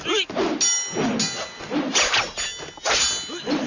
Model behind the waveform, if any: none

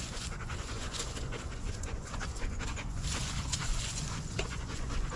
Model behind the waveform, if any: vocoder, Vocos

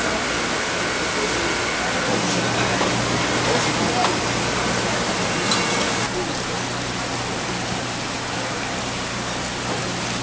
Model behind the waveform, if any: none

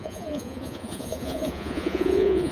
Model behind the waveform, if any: vocoder, Vocos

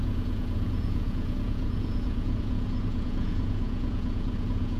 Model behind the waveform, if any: vocoder, Vocos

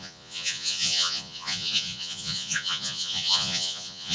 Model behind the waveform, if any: vocoder, Vocos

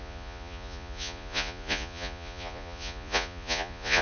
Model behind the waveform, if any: vocoder, Vocos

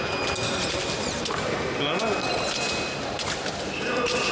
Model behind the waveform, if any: none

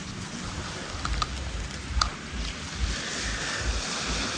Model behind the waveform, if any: none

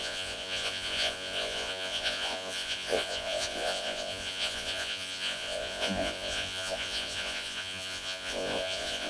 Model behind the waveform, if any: vocoder, Vocos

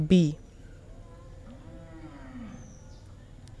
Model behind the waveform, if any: none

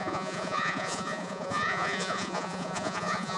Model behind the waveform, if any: vocoder, Vocos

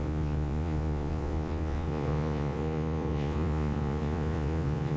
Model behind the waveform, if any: vocoder, Vocos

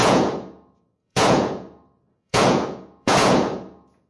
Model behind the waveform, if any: vocoder, Vocos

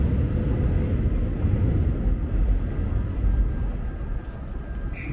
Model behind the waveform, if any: none